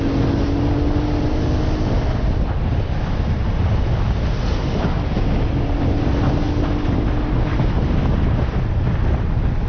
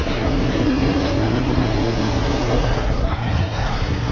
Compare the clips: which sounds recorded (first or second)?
first